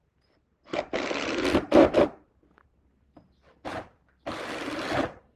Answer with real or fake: real